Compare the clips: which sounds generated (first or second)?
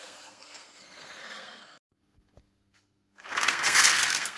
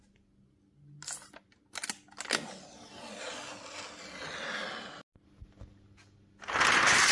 first